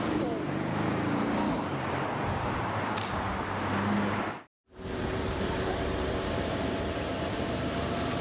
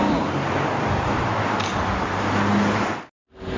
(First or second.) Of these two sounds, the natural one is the second